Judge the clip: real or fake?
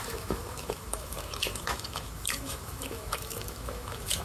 fake